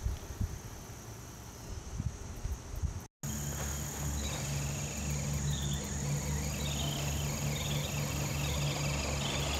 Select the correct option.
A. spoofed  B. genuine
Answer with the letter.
B